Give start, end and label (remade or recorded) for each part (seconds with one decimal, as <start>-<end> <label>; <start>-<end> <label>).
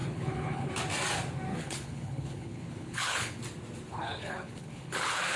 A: 0.0-0.7 remade; 0.7-1.5 recorded; 1.5-3.4 remade; 3.4-3.9 recorded; 3.9-5.4 remade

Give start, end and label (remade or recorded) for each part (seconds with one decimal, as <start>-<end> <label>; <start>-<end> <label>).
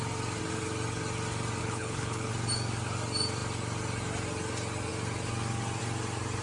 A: 0.0-1.6 recorded; 1.6-2.3 remade; 2.3-6.4 recorded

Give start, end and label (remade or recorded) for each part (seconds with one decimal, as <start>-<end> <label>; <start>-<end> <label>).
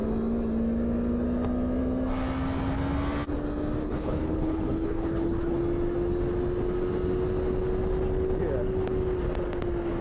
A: 0.0-3.8 recorded; 3.8-5.6 remade; 5.6-10.0 recorded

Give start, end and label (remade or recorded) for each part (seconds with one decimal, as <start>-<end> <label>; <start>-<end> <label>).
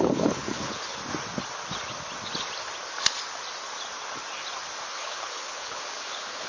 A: 0.0-1.0 remade; 1.0-4.9 recorded; 4.9-6.5 remade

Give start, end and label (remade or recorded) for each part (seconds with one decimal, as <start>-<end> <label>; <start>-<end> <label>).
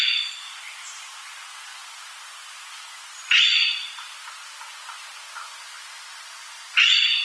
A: 0.0-7.2 recorded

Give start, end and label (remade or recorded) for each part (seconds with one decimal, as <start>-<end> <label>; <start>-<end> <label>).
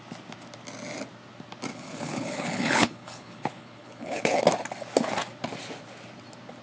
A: 0.0-1.7 recorded; 1.7-4.4 remade; 4.4-6.6 recorded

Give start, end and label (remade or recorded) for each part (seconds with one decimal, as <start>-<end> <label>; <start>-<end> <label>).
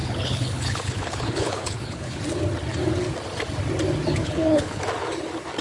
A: 0.0-2.2 remade; 2.2-4.2 recorded; 4.2-4.8 remade; 4.8-5.6 recorded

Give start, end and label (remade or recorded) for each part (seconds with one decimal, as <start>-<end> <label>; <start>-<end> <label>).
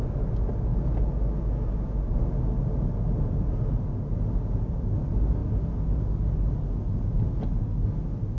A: 0.0-8.4 recorded